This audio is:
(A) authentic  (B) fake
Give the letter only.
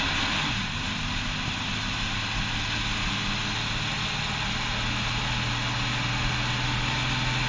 A